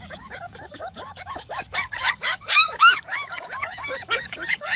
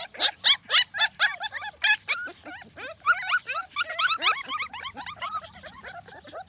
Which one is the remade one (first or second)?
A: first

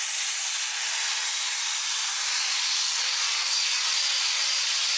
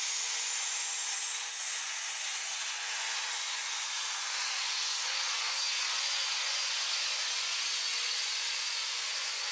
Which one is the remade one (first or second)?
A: second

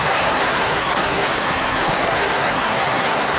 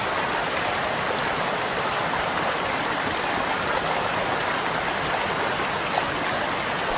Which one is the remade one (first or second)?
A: first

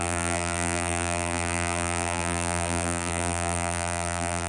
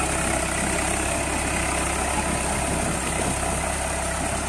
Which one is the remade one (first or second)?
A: first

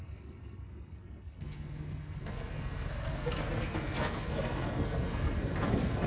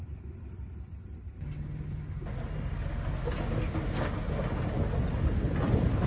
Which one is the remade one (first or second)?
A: first